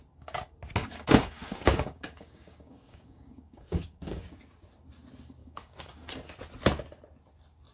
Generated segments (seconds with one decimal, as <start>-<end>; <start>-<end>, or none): 0.8-4.4; 5.4-6.1